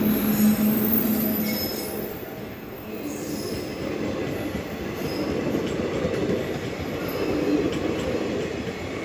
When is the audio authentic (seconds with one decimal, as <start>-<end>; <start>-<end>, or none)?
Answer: 0.0-2.4; 2.9-9.0